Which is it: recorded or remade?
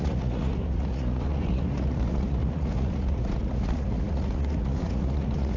remade